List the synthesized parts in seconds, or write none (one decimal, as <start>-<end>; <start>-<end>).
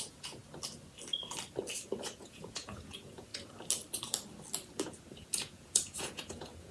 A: 0.0-0.4; 2.2-3.3; 5.1-6.7